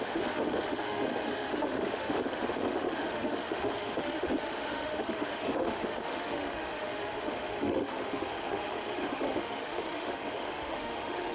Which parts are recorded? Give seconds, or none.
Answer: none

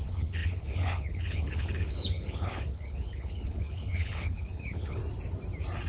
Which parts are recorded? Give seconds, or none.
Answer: 5.0-5.9